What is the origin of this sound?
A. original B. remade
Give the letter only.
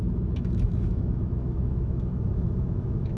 B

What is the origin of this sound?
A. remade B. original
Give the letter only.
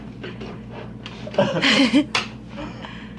B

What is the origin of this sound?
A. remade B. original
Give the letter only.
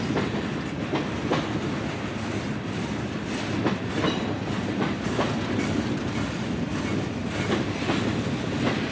B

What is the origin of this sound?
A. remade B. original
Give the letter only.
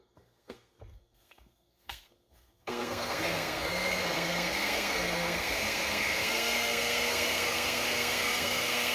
A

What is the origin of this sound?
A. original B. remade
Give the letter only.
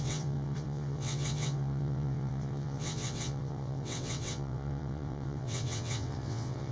B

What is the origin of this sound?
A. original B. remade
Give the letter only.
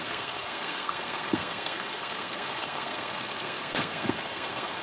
B